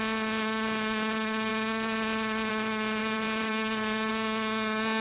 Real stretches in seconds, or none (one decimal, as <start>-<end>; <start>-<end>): 0.0-3.0; 4.1-5.0